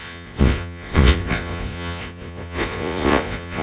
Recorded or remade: remade